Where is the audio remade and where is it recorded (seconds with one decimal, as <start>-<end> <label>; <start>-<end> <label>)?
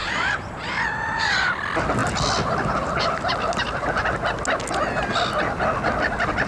0.0-1.5 remade; 1.5-6.5 recorded